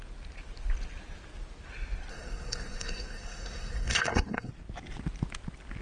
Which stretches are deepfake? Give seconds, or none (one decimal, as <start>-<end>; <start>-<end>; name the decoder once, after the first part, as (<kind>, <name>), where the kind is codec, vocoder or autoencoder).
2.1-4.5 (codec, SNAC)